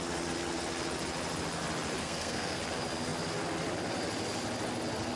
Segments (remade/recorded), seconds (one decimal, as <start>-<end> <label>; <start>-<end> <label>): 0.0-2.0 recorded; 2.0-2.6 remade; 2.6-5.2 recorded